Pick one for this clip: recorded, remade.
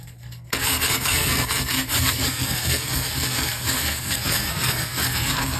remade